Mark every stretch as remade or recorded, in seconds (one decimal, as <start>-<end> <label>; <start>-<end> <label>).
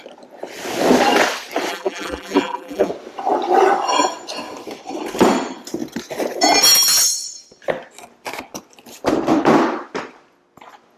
0.0-1.7 recorded; 1.7-2.9 remade; 2.9-11.0 recorded